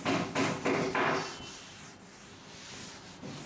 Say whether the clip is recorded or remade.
recorded